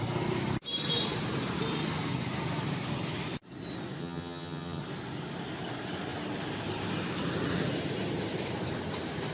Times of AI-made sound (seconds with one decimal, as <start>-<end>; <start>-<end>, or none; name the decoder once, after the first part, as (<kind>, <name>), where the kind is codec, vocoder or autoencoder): 4.0-4.8 (vocoder, HiFi-GAN)